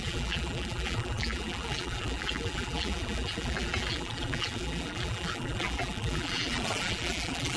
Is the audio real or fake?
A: fake